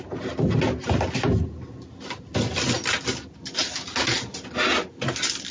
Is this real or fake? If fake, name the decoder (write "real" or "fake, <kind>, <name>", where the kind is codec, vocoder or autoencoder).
real